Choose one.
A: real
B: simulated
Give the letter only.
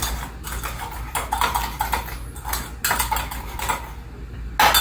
A